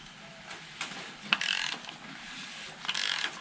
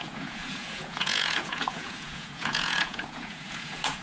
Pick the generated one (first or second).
second